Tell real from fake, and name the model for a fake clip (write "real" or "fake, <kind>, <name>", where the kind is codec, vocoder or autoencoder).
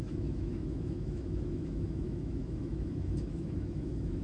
fake, autoencoder, DAC-VAE